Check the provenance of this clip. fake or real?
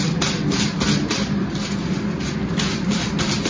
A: real